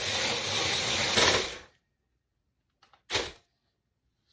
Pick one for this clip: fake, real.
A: real